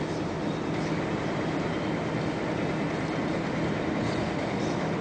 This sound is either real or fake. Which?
real